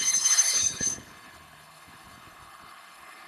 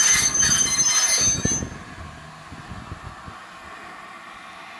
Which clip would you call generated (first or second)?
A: first